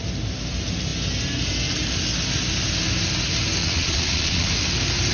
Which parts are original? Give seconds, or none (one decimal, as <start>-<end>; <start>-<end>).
0.0-3.6; 4.5-5.1